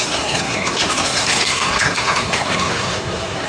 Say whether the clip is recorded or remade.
remade